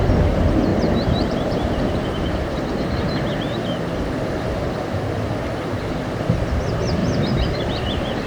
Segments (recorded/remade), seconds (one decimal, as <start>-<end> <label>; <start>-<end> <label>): 0.0-0.7 recorded; 0.7-4.1 remade; 4.1-7.0 recorded; 7.0-7.7 remade; 7.7-8.3 recorded